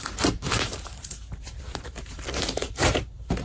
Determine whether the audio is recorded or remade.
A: remade